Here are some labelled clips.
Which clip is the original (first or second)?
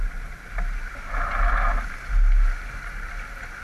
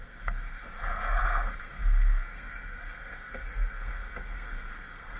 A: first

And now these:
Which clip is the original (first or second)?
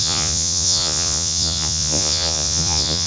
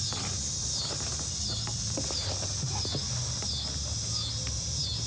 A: second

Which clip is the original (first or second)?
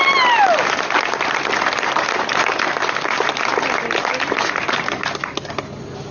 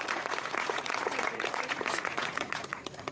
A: first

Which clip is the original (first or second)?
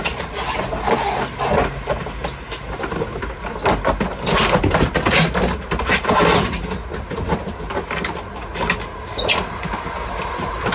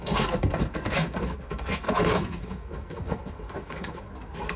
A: first